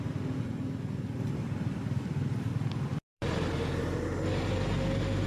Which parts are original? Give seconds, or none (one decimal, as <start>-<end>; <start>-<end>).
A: 0.0-1.4; 3.5-5.3